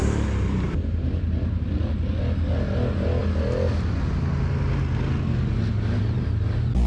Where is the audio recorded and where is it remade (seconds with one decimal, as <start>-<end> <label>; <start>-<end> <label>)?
0.0-1.8 remade; 1.8-6.9 recorded